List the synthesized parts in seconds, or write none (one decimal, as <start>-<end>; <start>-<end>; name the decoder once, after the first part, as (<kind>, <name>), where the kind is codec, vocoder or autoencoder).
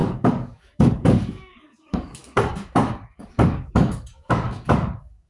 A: 0.0-5.3 (codec, DAC)